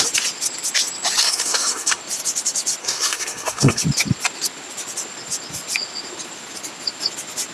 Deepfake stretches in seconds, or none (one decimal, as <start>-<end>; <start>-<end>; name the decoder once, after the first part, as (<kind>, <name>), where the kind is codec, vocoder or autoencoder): 1.2-2.0 (codec, SNAC); 2.8-3.8